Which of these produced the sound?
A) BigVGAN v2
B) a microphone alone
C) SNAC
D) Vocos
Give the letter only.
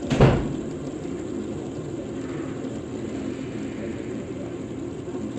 B